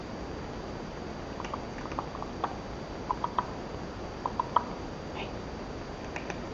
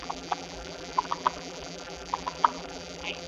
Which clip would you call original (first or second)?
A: first